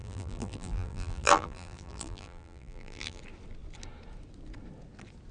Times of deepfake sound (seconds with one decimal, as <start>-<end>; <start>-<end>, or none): 0.0-3.2